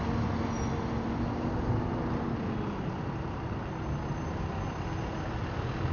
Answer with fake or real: real